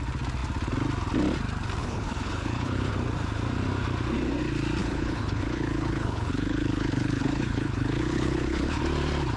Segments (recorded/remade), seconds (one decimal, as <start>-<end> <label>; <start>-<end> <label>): 0.0-1.8 recorded; 1.8-2.9 remade; 2.9-4.8 recorded; 4.8-8.8 remade; 8.8-9.4 recorded